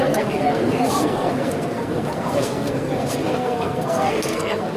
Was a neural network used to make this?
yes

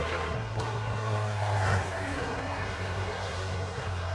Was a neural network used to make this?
yes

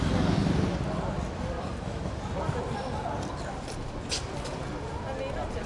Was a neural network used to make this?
no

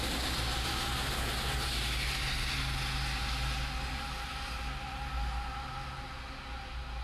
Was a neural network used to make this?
no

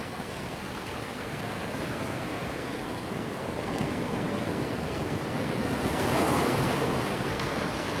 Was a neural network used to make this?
yes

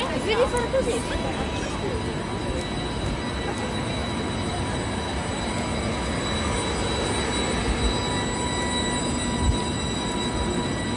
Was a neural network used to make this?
no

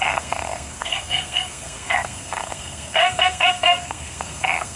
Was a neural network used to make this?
yes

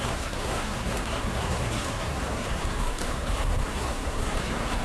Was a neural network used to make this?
yes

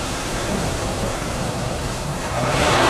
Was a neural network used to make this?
yes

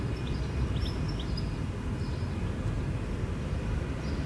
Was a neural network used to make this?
no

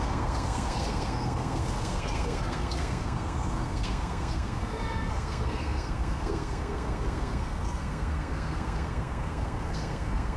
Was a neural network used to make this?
yes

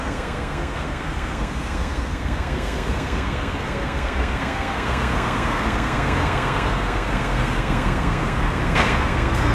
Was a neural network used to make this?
yes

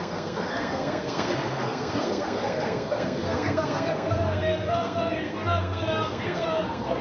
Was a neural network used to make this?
yes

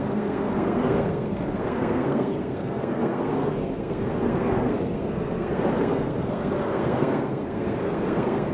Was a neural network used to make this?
yes